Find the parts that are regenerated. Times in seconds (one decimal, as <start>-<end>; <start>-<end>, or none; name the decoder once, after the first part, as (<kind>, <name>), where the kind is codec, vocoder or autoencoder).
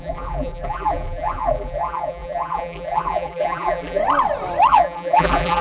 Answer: 0.0-4.0 (vocoder, BigVGAN v2); 4.7-5.6